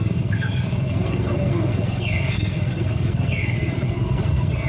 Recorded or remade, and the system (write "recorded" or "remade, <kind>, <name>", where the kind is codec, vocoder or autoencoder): remade, codec, SNAC